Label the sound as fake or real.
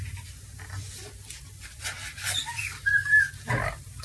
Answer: fake